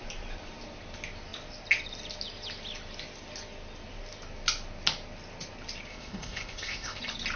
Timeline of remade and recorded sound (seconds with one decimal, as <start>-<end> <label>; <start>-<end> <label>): 0.0-5.9 recorded; 5.9-7.0 remade; 7.0-7.4 recorded